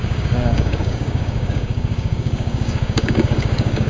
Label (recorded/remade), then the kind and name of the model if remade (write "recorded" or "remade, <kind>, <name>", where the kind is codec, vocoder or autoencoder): remade, codec, DAC